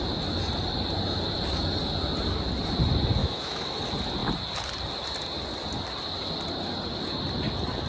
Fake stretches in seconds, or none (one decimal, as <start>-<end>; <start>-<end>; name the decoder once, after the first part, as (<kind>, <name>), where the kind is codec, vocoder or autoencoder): 3.2-3.8 (autoencoder, DAC-VAE)